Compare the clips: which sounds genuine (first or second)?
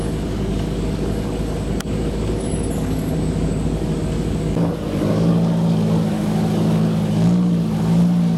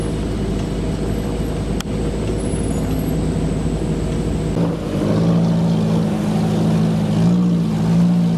second